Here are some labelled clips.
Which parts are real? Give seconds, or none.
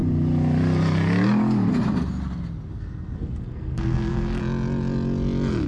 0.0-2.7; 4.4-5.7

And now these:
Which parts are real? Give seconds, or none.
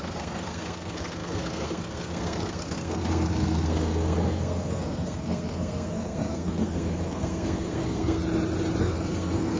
8.2-8.8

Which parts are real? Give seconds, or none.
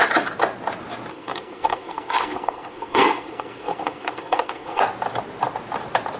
0.0-1.1; 4.8-6.2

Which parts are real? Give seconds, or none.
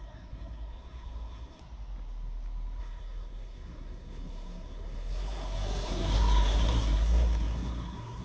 1.6-2.8